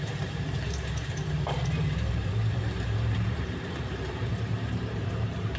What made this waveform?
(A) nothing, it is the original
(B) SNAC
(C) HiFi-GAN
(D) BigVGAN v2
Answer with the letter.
D